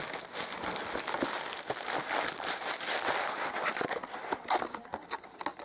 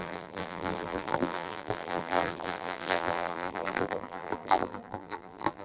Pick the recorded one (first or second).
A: first